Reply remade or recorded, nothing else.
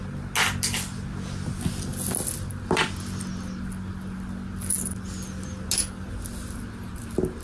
recorded